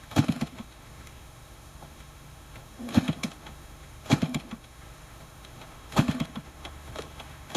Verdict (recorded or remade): remade